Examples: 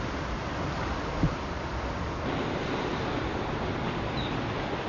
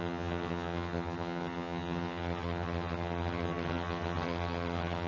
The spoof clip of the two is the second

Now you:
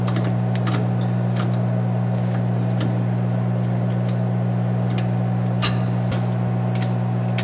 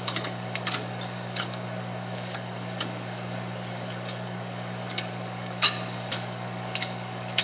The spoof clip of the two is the second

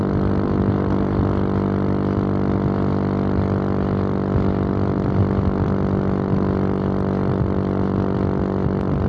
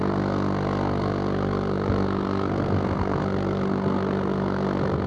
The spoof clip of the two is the second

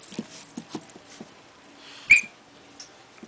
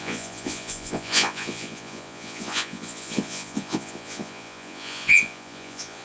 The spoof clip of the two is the second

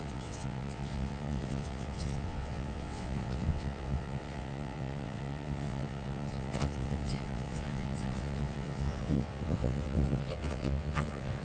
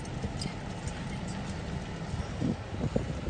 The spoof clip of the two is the first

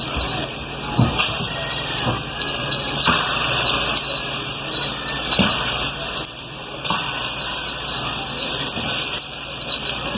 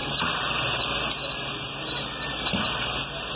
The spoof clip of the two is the first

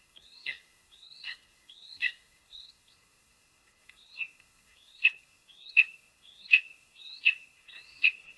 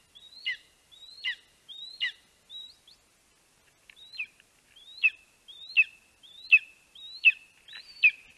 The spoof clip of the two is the first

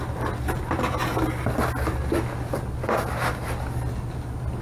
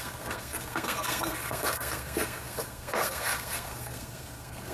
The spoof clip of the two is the second